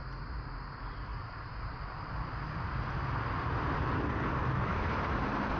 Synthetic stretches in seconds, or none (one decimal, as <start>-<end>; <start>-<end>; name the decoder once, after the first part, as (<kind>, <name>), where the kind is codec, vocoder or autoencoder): 4.4-4.9 (autoencoder, DAC-VAE)